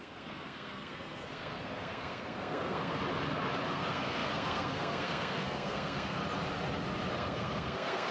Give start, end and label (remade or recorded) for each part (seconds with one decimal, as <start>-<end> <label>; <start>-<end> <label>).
0.0-3.0 remade; 3.0-3.7 recorded; 3.7-6.2 remade; 6.2-7.1 recorded; 7.1-8.1 remade